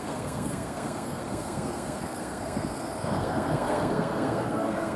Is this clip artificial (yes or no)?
yes